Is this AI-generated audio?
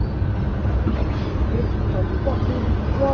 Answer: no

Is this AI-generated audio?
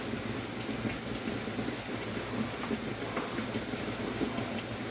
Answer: no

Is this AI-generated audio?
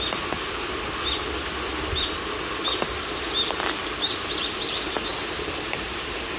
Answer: no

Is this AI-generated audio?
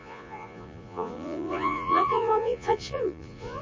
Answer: yes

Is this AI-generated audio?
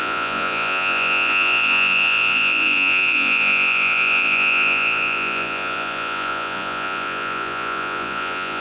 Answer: yes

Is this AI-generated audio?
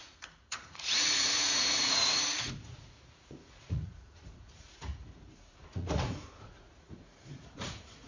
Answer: yes